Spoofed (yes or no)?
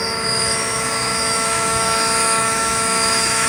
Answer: yes